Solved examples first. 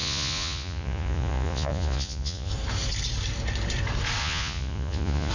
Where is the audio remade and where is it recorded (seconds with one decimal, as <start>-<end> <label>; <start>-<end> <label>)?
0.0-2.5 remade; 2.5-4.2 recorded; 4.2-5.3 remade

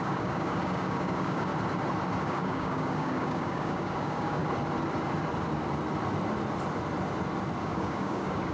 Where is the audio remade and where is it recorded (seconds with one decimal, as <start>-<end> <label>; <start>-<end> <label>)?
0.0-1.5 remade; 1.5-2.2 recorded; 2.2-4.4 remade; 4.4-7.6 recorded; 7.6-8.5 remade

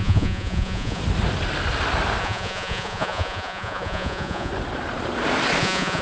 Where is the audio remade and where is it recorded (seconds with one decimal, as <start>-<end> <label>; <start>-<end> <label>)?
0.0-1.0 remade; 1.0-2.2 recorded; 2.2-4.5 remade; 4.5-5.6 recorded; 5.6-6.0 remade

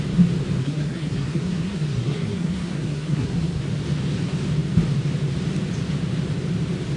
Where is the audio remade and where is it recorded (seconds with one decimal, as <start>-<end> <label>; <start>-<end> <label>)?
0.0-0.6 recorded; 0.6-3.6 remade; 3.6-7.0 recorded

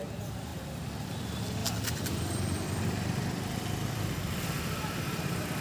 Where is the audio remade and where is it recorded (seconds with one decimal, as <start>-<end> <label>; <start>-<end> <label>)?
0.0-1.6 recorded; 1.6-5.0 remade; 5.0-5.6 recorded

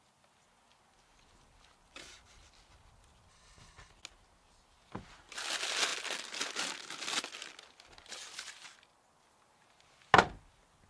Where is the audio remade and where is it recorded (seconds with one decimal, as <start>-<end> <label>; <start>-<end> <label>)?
0.0-3.3 recorded; 3.3-3.9 remade; 3.9-10.9 recorded

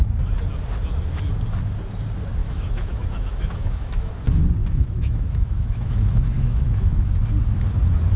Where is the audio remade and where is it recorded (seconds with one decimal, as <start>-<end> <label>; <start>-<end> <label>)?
0.0-2.4 recorded; 2.4-4.1 remade; 4.1-4.6 recorded; 4.6-7.1 remade; 7.1-8.2 recorded